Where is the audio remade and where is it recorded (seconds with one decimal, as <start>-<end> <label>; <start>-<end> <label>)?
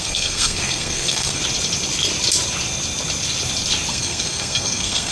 0.0-1.4 remade; 1.4-3.9 recorded; 3.9-5.1 remade